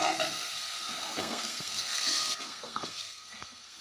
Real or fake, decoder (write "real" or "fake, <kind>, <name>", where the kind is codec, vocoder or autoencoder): fake, codec, SNAC